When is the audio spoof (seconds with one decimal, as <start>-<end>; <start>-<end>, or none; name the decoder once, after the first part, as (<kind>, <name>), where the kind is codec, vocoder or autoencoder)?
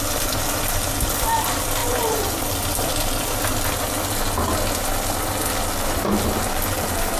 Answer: none